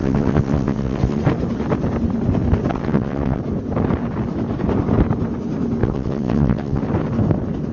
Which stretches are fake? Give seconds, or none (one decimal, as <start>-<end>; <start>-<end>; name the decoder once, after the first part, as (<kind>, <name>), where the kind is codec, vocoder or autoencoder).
0.0-1.2 (vocoder, WaveNeXt); 2.7-3.4; 5.8-6.8